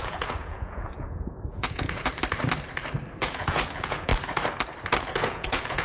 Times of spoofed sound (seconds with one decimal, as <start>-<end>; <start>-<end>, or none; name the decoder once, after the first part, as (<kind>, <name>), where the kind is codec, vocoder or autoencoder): 0.0-2.1 (vocoder, Vocos); 3.2-4.1; 5.0-5.8